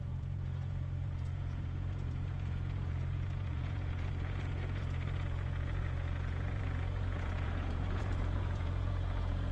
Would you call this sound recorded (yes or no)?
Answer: no